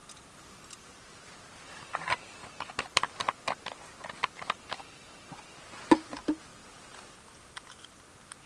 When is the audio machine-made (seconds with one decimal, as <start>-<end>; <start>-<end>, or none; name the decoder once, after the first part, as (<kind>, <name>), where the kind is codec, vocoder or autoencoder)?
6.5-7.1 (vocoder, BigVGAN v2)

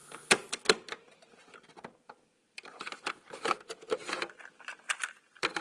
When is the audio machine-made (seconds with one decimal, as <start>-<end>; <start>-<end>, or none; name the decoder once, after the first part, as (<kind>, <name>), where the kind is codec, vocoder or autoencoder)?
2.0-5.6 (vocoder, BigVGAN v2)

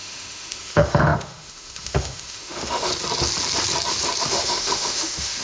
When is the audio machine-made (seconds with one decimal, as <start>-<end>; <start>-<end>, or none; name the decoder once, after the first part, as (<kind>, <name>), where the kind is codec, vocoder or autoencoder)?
0.0-2.9 (autoencoder, DAC-VAE); 4.3-5.4

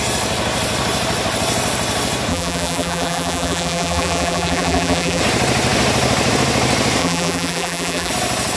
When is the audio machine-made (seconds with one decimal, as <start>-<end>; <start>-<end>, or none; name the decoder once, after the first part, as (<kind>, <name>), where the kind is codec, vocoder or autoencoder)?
2.3-5.2 (vocoder, BigVGAN v2); 7.0-8.1